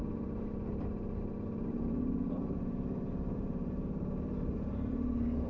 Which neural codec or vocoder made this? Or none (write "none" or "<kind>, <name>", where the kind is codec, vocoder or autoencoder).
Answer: vocoder, BigVGAN v2